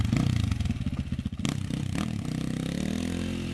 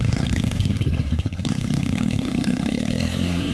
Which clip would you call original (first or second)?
first